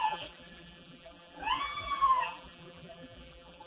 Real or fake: fake